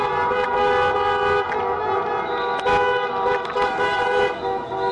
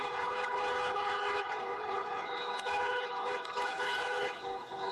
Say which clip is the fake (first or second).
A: second